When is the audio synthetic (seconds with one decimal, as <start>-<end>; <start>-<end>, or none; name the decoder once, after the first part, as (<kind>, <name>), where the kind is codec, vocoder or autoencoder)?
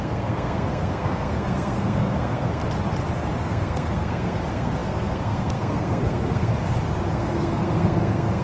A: 0.0-2.6 (codec, SNAC); 3.4-6.5; 7.1-8.4